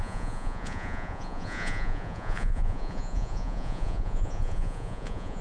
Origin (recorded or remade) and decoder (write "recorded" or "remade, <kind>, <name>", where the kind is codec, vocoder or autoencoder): remade, vocoder, Vocos